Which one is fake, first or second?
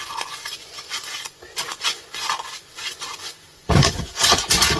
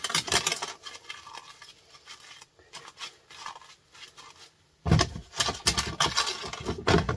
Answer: first